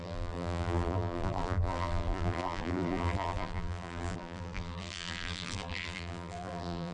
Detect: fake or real fake